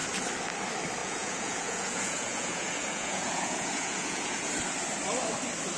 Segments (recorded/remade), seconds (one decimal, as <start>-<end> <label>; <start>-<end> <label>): 0.0-1.0 recorded; 1.0-4.5 remade; 4.5-5.8 recorded